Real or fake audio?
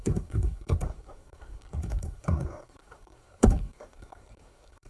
fake